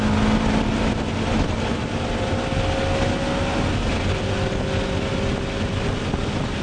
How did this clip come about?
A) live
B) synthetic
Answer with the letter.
A